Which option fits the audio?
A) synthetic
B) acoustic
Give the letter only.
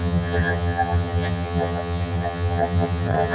A